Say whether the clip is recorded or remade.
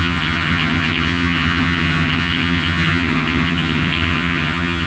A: remade